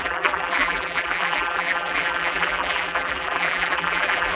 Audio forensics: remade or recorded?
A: remade